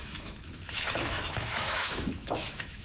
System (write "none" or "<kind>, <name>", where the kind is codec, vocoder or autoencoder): autoencoder, DAC-VAE